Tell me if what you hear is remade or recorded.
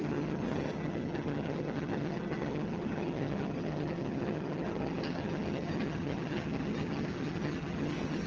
remade